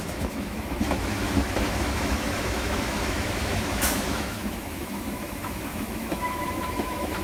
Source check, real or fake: fake